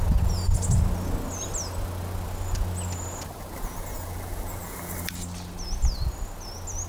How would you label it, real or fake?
real